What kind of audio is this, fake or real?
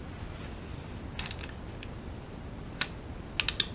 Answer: real